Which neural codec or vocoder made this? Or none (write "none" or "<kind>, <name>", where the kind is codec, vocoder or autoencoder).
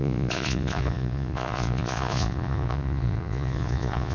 vocoder, Vocos